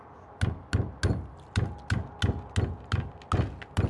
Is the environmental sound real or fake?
real